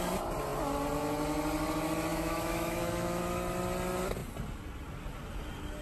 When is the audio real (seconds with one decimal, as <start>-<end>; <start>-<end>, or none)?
0.0-2.1; 3.2-5.8